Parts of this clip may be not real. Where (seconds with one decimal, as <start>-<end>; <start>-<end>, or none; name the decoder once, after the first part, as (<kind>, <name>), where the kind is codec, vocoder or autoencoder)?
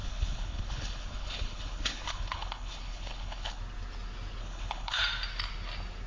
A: 0.0-3.6 (codec, HILCodec); 4.4-5.0